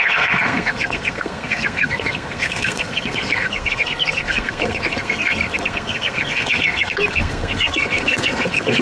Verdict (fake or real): fake